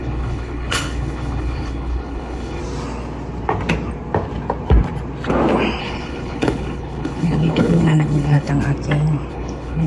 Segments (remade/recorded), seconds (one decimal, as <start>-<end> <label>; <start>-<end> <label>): 0.0-2.6 remade; 2.6-5.8 recorded; 5.8-8.5 remade; 8.5-9.3 recorded; 9.3-9.9 remade